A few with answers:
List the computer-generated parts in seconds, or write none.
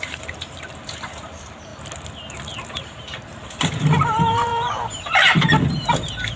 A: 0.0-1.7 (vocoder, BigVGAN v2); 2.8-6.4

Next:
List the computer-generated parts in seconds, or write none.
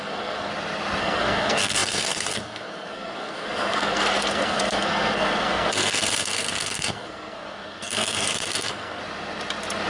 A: 0.0-0.5 (codec, SNAC); 1.0-9.0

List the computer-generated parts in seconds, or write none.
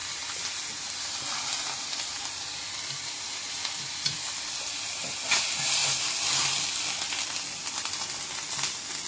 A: none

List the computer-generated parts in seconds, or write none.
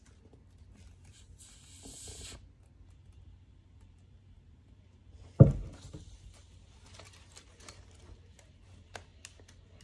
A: 3.5-5.0 (vocoder, BigVGAN v2); 7.0-9.1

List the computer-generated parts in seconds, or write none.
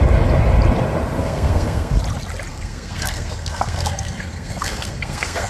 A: 1.2-2.0 (codec, SNAC); 2.5-5.5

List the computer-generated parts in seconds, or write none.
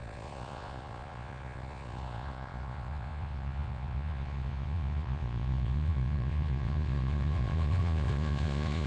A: 0.0-8.9 (vocoder, Vocos)